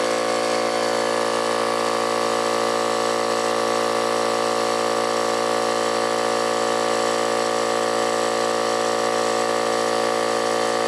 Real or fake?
real